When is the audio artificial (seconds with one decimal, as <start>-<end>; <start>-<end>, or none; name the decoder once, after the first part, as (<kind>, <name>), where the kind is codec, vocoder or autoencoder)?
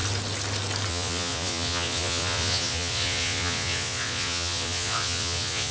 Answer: 0.9-5.7 (vocoder, Vocos)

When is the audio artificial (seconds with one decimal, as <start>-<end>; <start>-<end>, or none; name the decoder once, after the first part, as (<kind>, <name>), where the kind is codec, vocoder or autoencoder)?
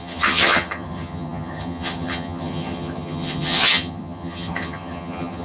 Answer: 0.0-5.4 (vocoder, HiFi-GAN)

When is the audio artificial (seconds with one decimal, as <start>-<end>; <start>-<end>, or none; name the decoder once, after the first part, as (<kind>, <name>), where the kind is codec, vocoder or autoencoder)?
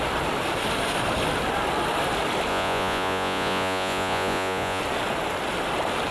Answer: 2.5-4.8 (vocoder, Vocos)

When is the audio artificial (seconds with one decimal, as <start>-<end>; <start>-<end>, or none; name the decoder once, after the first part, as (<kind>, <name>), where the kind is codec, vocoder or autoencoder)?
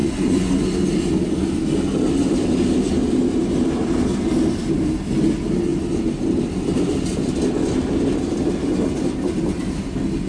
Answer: 0.0-0.5 (vocoder, Vocos)